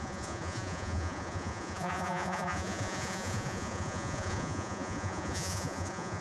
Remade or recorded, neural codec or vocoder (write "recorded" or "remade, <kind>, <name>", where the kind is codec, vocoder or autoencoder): remade, vocoder, Vocos